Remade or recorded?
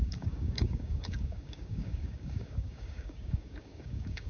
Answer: remade